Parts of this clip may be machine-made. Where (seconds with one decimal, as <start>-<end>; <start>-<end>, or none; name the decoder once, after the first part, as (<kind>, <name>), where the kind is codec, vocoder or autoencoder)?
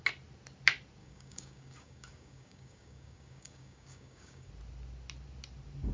1.0-4.5 (codec, DAC)